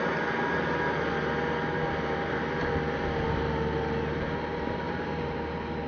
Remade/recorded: recorded